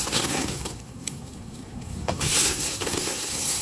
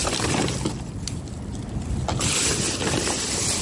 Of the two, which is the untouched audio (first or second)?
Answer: second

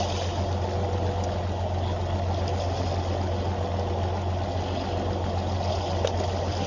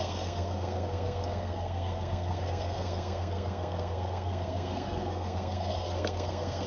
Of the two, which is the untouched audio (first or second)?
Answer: first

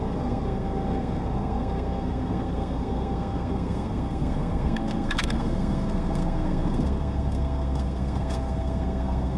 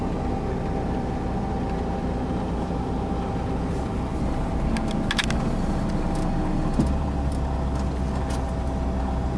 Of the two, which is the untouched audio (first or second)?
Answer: second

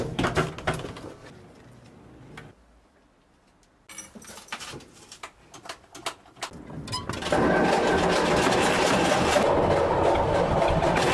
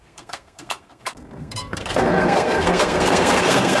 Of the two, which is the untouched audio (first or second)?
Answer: first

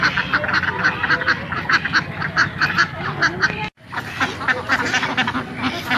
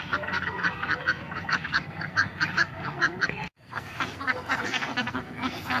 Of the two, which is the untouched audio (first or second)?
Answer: first